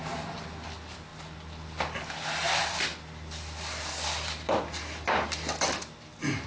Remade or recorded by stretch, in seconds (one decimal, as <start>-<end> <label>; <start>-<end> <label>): 0.0-6.5 recorded